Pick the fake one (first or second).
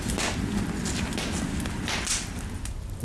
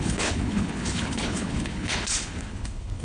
second